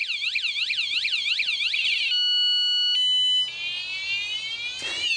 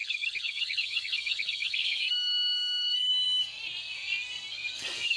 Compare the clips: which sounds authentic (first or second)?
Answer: first